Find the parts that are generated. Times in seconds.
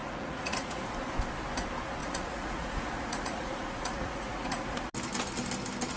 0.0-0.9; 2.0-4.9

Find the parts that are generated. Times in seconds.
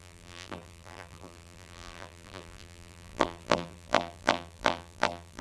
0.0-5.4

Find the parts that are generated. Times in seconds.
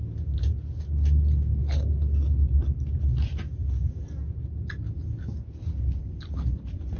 none